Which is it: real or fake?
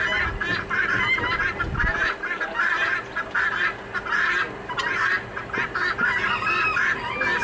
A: real